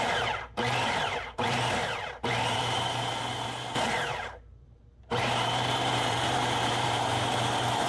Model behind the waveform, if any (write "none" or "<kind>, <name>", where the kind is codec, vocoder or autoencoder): vocoder, BigVGAN v2